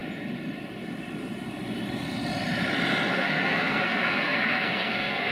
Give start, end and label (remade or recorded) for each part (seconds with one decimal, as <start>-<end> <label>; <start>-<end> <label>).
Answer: 0.0-3.1 recorded; 3.1-5.3 remade